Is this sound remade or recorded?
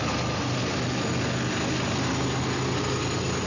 recorded